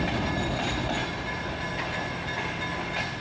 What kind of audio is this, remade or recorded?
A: recorded